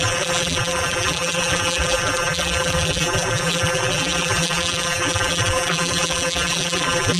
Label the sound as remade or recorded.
remade